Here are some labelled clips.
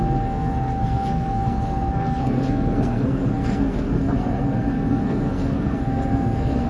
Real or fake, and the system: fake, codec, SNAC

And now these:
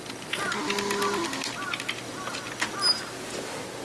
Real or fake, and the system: real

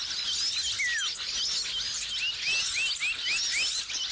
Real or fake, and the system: real